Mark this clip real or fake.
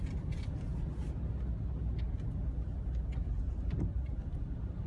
real